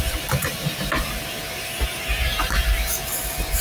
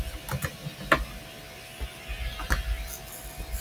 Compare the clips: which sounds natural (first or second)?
second